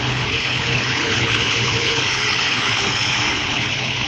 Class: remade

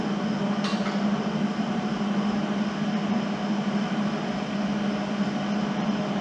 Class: recorded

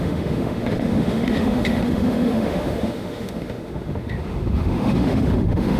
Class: remade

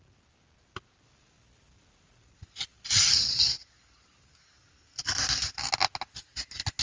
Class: recorded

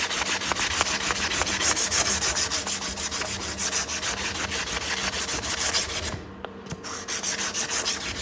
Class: recorded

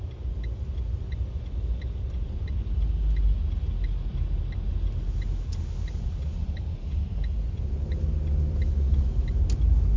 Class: recorded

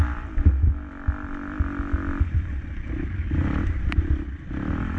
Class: recorded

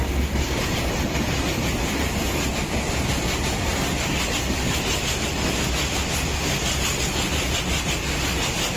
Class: recorded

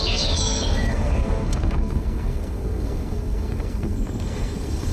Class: remade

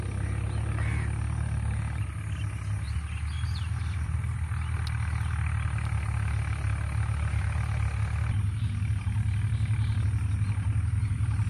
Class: recorded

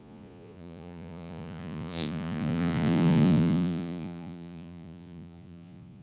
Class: remade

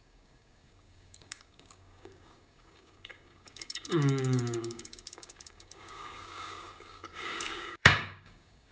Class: remade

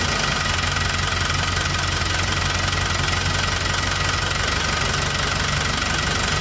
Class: recorded